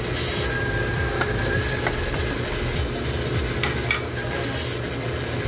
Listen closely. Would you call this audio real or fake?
real